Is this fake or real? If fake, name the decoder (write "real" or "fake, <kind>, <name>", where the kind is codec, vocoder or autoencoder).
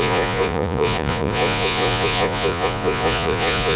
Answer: fake, vocoder, Vocos